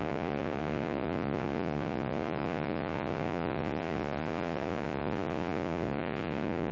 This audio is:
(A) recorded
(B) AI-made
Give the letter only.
B